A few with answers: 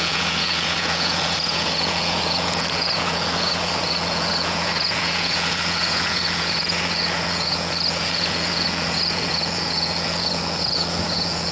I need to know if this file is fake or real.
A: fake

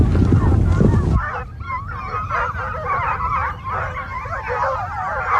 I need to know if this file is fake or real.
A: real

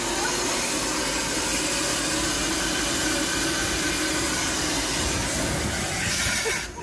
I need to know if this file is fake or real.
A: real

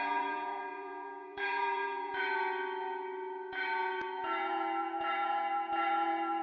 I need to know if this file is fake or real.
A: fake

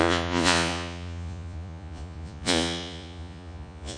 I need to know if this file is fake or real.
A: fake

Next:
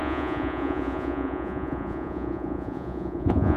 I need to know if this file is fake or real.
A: fake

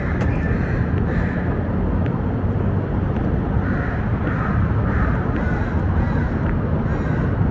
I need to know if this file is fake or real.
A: real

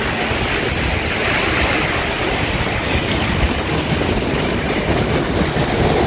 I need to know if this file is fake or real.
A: real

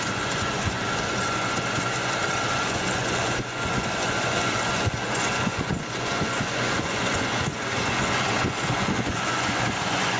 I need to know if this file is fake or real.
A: fake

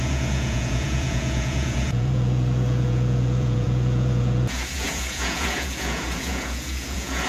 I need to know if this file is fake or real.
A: fake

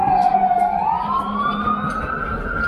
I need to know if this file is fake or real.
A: real